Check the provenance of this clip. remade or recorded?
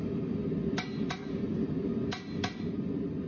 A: recorded